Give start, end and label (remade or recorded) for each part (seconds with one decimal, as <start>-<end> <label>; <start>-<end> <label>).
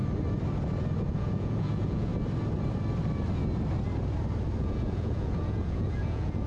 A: 0.0-1.1 recorded; 1.1-2.1 remade; 2.1-4.6 recorded; 4.6-6.5 remade